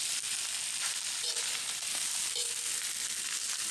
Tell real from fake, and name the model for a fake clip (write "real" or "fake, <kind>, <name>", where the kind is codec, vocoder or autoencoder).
real